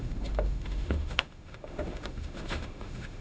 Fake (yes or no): yes